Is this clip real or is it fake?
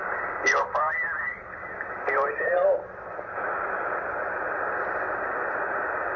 real